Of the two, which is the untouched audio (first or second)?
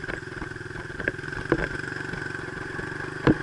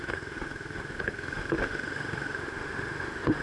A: first